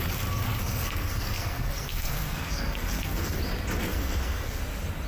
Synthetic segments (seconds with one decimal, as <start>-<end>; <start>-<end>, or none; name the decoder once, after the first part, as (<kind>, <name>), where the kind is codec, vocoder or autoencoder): 0.6-3.4 (codec, SNAC); 3.9-4.6